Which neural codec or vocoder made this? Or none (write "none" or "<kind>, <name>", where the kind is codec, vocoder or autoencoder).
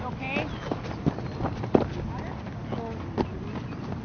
none